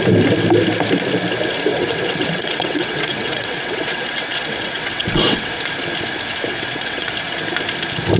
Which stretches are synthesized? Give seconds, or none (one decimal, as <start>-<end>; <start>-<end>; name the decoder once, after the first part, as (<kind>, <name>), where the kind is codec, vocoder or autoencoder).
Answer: 1.7-5.5 (vocoder, WaveNeXt); 6.5-7.1